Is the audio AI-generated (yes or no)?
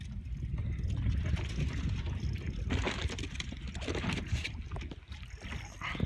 no